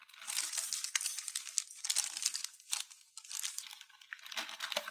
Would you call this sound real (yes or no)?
yes